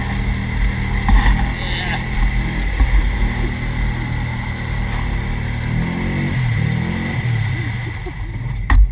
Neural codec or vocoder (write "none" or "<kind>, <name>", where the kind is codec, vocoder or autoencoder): none